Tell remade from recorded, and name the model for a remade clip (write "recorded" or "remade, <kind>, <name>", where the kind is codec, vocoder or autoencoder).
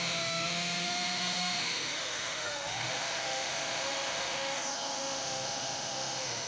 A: remade, autoencoder, DAC-VAE